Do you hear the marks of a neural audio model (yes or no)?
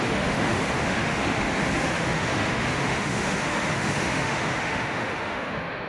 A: yes